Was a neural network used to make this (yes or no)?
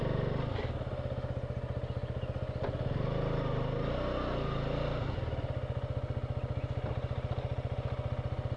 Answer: no